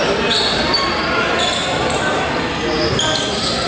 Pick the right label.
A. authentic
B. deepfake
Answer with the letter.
A